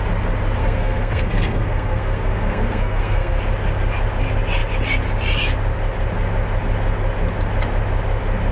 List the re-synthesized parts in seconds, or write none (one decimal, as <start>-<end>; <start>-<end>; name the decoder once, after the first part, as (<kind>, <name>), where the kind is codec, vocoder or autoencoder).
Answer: 0.6-3.4 (codec, SNAC)